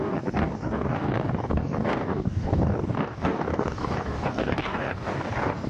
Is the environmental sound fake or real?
fake